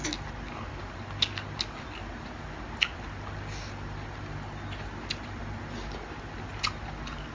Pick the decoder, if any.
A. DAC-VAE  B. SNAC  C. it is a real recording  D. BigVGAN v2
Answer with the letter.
C